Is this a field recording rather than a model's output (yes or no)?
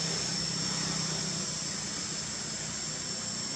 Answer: yes